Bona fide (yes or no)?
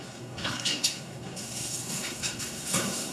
no